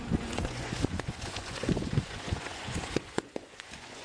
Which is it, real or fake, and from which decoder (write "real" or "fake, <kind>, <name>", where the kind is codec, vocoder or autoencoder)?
fake, vocoder, Vocos